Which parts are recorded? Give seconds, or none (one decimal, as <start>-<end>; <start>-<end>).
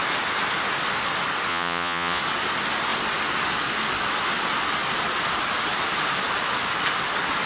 0.0-1.5; 2.2-7.5